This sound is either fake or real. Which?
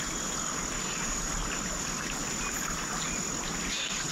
real